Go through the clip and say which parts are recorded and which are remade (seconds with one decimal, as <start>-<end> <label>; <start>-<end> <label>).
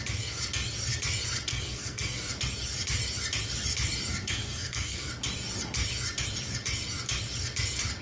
0.0-1.5 recorded; 1.5-2.3 remade; 2.3-4.1 recorded; 4.1-5.1 remade; 5.1-8.0 recorded